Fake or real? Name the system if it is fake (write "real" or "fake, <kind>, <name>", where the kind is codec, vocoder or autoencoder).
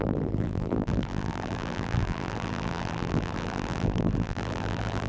fake, vocoder, BigVGAN v2